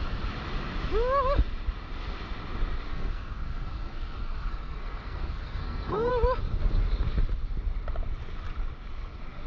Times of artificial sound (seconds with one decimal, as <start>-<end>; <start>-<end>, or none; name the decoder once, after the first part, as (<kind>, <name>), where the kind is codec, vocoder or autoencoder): 2.9-6.1 (codec, SNAC)